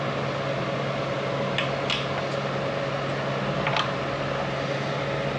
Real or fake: real